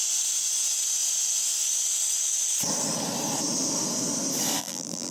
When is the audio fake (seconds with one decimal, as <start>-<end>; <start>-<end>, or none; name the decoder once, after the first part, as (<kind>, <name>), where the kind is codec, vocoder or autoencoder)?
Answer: 4.6-5.1 (vocoder, BigVGAN v2)